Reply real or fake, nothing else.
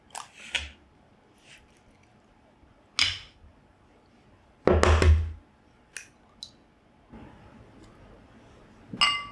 real